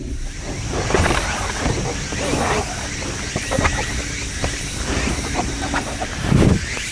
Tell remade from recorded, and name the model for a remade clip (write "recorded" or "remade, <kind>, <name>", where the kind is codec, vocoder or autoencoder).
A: recorded